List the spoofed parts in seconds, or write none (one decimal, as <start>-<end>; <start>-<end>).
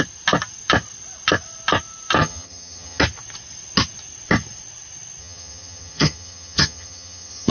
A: 2.2-3.0; 5.2-7.5